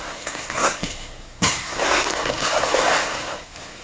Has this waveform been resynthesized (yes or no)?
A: yes